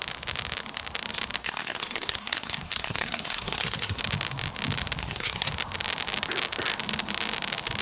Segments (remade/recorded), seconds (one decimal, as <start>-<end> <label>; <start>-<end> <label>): 0.0-1.4 recorded; 1.4-4.0 remade; 4.0-5.0 recorded; 5.0-5.5 remade; 5.5-7.8 recorded